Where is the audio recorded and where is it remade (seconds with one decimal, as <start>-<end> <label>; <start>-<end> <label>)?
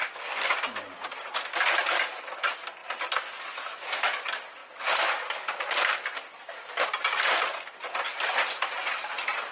0.0-9.5 recorded